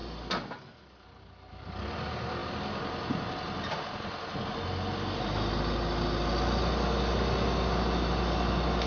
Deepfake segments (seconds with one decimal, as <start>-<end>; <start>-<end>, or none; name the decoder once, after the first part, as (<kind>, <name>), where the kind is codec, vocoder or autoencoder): none